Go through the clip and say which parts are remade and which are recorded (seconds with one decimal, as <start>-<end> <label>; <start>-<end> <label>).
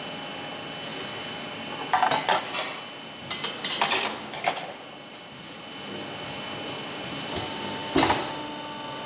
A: 0.0-9.1 recorded